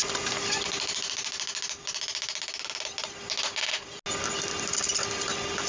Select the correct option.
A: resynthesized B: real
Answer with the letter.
B